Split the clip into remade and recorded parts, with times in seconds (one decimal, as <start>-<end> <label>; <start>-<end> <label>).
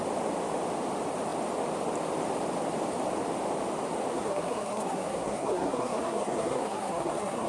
0.0-4.1 recorded; 4.1-7.5 remade